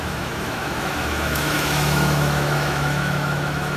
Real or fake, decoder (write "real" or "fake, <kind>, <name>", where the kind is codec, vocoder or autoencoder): fake, autoencoder, DAC-VAE